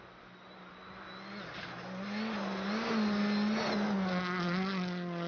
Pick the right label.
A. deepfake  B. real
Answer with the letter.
B